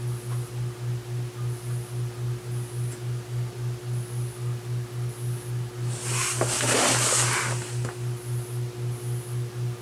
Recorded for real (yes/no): yes